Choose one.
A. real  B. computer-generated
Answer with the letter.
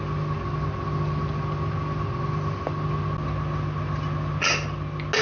A